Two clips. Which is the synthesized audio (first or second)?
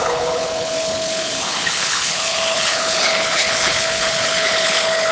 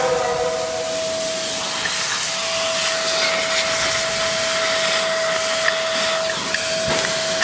first